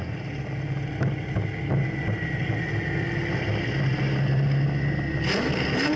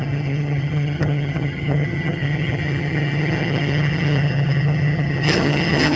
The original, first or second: first